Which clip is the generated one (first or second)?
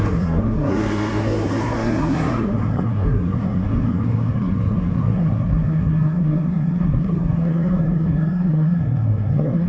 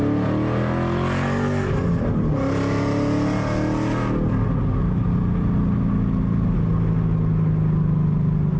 first